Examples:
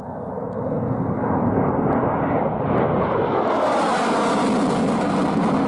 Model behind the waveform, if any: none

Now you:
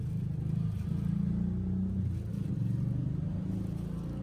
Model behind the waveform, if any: none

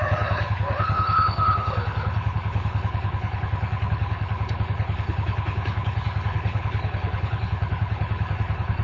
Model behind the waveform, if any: codec, HILCodec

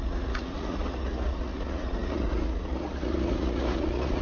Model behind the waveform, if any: vocoder, Vocos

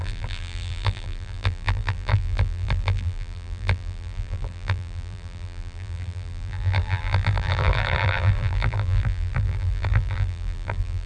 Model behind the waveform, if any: vocoder, BigVGAN v2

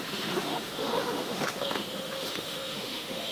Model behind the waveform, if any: autoencoder, DAC-VAE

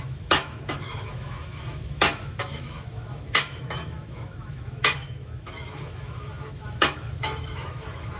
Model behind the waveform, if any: autoencoder, DAC-VAE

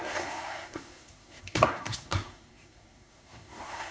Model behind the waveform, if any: codec, SNAC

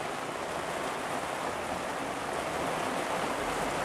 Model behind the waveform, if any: none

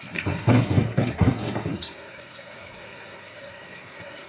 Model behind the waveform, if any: codec, SNAC